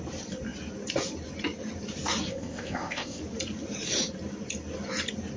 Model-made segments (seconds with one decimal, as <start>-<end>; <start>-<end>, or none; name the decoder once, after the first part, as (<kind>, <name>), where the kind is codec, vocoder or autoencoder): 2.3-3.2 (codec, ZipCodec)